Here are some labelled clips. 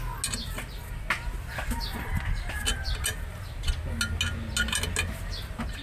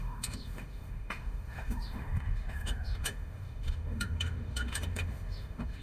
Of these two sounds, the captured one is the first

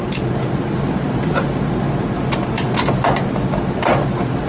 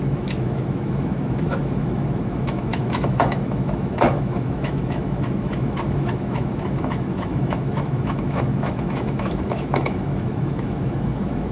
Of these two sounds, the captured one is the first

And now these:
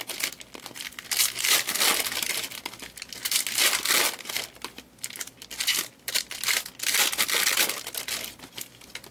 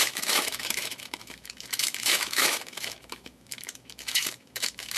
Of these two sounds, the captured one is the first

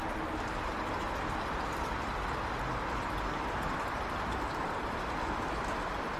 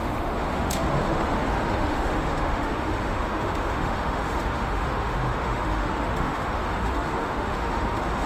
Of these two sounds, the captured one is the first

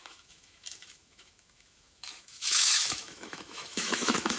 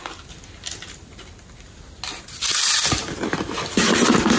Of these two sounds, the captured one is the second